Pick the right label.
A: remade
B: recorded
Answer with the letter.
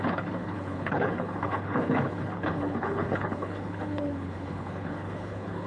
A